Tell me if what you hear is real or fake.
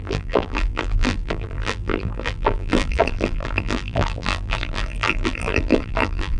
fake